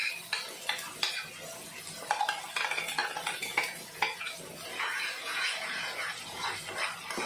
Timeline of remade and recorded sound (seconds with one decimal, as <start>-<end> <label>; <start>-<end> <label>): 0.0-3.0 recorded; 3.0-6.5 remade; 6.5-7.3 recorded